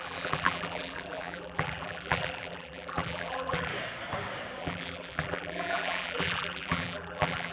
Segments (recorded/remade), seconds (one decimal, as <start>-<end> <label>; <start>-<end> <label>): 0.0-3.7 remade; 3.7-4.6 recorded; 4.6-7.5 remade